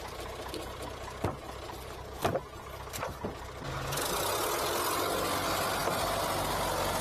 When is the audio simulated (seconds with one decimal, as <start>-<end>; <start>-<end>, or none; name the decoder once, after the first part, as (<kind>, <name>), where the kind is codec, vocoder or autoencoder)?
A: none